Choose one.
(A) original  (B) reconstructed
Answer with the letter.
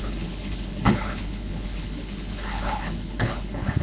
B